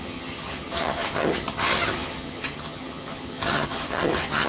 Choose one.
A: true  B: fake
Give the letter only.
B